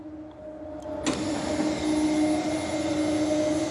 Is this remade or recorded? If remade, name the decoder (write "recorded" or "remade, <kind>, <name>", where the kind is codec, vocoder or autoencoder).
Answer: recorded